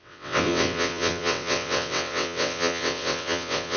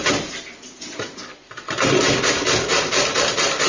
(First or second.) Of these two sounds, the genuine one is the second